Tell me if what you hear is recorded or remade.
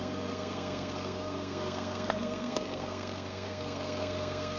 remade